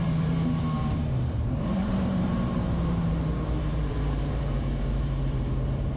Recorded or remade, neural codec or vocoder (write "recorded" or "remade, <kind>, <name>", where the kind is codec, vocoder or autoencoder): remade, vocoder, BigVGAN v2